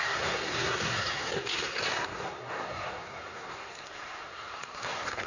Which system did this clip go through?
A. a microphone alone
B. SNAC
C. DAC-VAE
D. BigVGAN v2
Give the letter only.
B